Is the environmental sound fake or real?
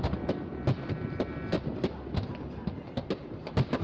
real